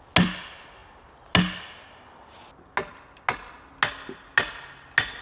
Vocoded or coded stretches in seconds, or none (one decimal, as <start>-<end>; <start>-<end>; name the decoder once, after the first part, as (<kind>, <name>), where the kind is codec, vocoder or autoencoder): none